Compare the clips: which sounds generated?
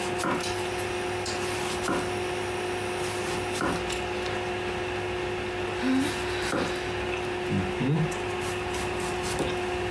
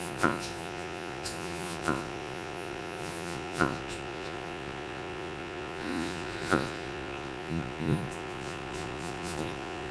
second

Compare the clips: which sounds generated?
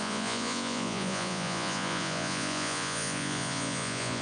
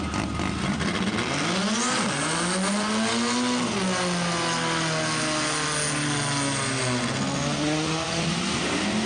first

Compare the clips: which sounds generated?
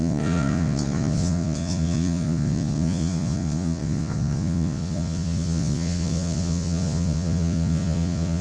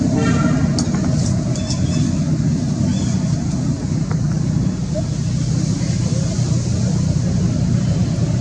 first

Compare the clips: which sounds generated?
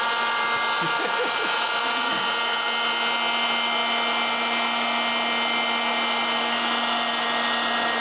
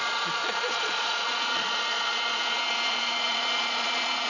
second